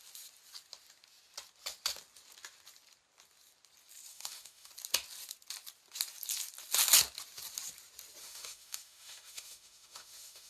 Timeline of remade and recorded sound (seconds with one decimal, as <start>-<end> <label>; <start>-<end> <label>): 0.0-4.1 recorded; 4.1-4.7 remade; 4.7-8.2 recorded; 8.2-10.5 remade